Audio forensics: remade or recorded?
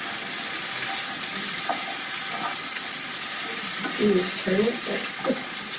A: recorded